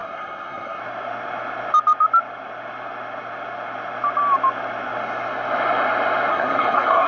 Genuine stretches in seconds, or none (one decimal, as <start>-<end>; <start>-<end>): 0.8-6.3